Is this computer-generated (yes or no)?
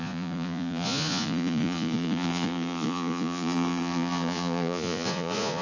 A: yes